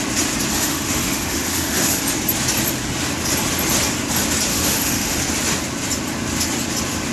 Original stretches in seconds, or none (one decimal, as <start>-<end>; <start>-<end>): 0.0-0.5; 2.0-4.5; 5.2-7.1